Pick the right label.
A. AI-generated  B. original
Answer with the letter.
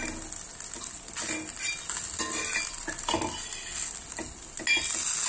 B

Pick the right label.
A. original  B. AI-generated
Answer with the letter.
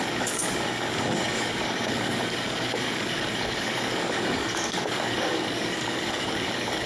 B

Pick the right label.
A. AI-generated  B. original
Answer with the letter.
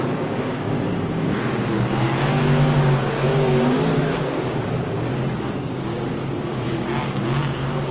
A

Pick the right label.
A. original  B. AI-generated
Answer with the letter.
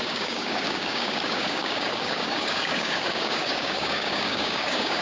B